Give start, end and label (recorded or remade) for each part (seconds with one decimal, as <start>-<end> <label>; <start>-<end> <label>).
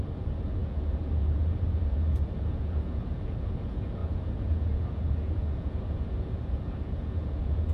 0.0-7.7 remade